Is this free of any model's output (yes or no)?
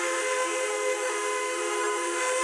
no